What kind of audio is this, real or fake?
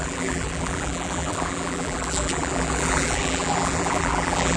fake